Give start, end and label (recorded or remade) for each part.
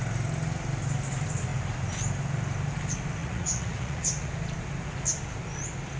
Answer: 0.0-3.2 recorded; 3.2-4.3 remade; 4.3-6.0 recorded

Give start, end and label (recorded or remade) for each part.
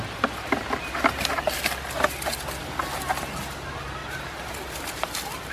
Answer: 0.0-5.5 recorded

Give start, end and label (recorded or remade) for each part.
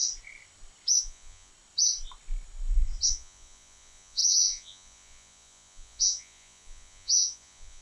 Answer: 0.0-1.0 recorded; 1.0-1.5 remade; 1.5-3.1 recorded; 3.1-7.8 remade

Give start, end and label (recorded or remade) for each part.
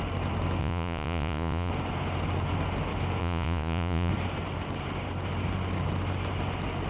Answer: 0.0-0.6 recorded; 0.6-1.7 remade; 1.7-3.2 recorded; 3.2-4.1 remade; 4.1-6.9 recorded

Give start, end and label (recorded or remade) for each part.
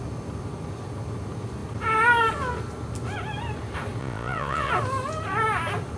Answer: 0.0-4.0 recorded; 4.0-4.7 remade; 4.7-6.0 recorded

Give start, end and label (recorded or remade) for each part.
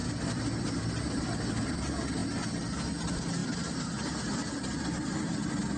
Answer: 0.0-5.8 recorded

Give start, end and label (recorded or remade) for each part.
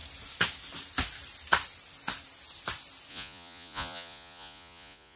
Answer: 0.0-3.1 recorded; 3.1-5.2 remade